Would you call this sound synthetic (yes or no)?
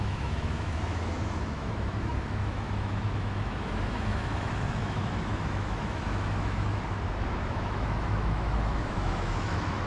yes